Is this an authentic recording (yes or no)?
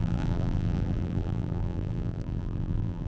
no